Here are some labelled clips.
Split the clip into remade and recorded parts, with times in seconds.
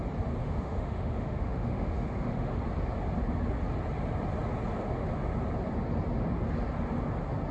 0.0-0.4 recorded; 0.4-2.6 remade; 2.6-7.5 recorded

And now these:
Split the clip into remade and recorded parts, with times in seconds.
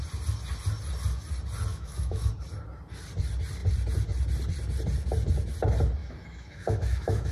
0.0-1.7 recorded; 1.7-2.3 remade; 2.3-6.0 recorded; 6.0-7.3 remade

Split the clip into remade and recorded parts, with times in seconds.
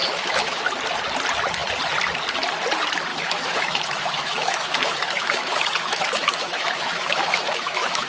0.0-0.6 remade; 0.6-3.1 recorded; 3.1-8.1 remade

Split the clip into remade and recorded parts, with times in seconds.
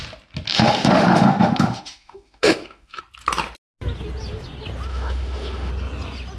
0.0-0.5 recorded; 0.5-3.0 remade; 3.0-4.9 recorded; 4.9-5.7 remade; 5.7-6.4 recorded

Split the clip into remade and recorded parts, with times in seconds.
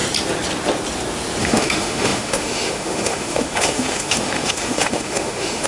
0.0-1.4 recorded; 1.4-5.7 remade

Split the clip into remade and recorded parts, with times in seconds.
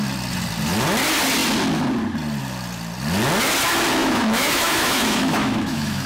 0.0-4.0 recorded; 4.0-6.1 remade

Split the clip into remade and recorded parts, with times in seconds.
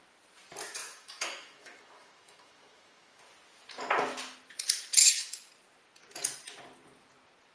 0.0-0.8 recorded; 0.8-3.2 remade; 3.2-5.0 recorded; 5.0-5.5 remade; 5.5-7.5 recorded